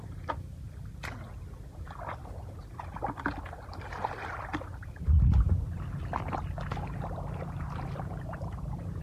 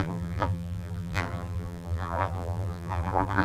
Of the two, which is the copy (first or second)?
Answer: second